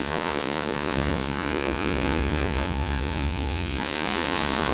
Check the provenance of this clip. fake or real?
fake